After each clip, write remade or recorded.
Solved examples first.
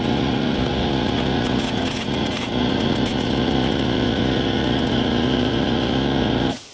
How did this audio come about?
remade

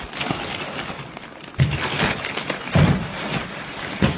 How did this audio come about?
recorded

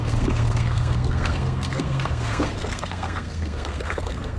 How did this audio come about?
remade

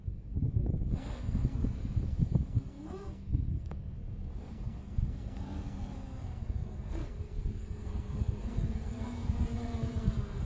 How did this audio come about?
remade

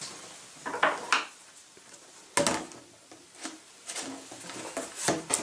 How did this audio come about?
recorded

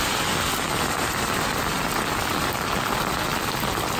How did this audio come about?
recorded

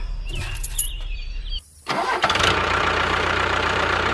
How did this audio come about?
remade